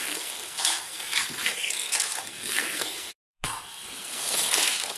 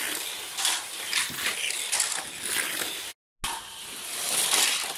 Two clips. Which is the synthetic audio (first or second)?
first